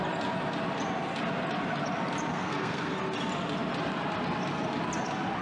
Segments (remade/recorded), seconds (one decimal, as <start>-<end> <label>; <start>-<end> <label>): 0.0-2.3 recorded; 2.3-3.0 remade; 3.0-5.4 recorded